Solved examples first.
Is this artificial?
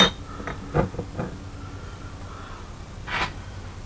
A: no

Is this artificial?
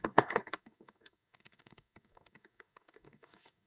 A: yes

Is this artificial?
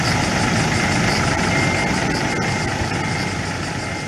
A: no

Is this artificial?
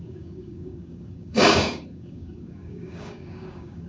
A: yes